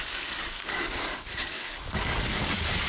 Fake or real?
fake